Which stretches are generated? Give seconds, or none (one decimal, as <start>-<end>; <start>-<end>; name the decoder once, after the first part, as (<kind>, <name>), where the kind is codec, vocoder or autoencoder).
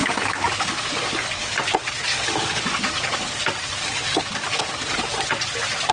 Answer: 0.0-1.6 (codec, DAC); 2.1-5.0